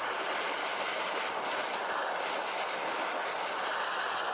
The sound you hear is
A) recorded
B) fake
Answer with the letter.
A